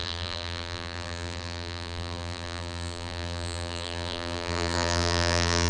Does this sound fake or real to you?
fake